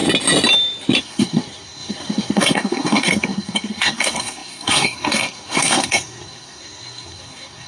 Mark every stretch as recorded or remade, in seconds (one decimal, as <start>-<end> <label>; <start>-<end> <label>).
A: 0.0-1.0 recorded; 1.0-7.7 remade